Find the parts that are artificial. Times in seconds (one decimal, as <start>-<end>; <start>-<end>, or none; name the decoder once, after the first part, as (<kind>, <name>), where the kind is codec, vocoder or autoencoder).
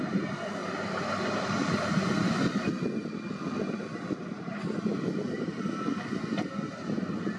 0.6-1.9 (vocoder, BigVGAN v2); 4.3-5.6